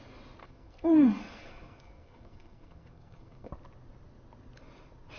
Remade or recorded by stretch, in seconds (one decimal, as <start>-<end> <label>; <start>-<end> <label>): 0.0-0.4 recorded; 0.4-3.5 remade; 3.5-5.2 recorded